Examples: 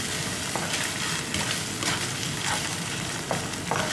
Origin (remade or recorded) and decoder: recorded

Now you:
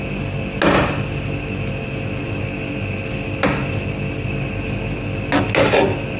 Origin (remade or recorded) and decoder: recorded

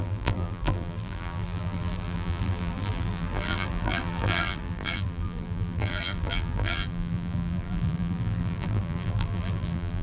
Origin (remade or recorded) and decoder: remade, vocoder, BigVGAN v2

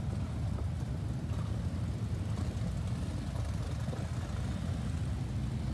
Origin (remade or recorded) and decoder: recorded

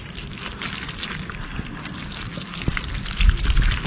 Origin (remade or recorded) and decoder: recorded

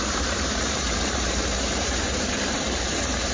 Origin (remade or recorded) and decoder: remade, vocoder, BigVGAN v2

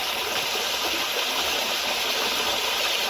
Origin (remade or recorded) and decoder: recorded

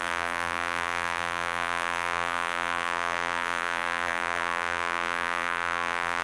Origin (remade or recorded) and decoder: remade, vocoder, BigVGAN v2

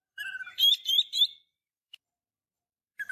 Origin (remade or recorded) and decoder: remade, vocoder, BigVGAN v2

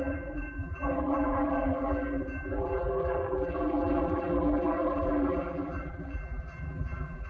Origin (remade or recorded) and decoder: remade, vocoder, BigVGAN v2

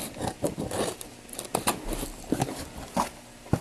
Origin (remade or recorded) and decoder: recorded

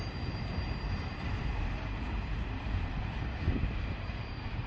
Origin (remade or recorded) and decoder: remade, vocoder, BigVGAN v2